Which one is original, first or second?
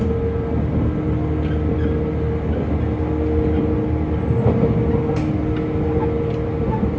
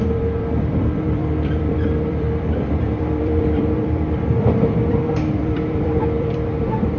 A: first